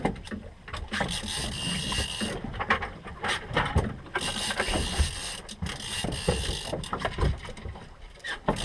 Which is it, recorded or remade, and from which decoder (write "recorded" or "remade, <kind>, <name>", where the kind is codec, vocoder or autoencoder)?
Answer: recorded